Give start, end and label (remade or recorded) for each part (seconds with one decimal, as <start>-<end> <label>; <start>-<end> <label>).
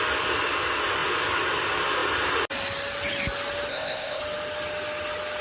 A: 0.0-3.7 recorded; 3.7-4.2 remade; 4.2-5.4 recorded